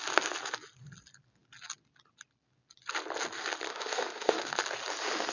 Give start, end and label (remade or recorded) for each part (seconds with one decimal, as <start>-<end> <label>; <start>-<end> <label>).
0.0-3.7 recorded; 3.7-4.5 remade; 4.5-5.3 recorded